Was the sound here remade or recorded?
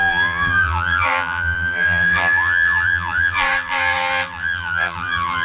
remade